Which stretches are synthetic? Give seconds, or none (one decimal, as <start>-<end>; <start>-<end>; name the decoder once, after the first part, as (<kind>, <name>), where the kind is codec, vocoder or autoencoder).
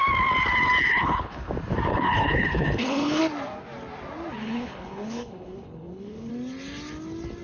0.8-1.5 (codec, HILCodec); 1.9-3.2; 4.4-6.3